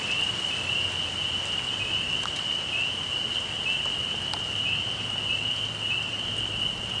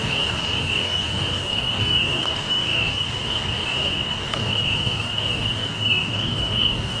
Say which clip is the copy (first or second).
second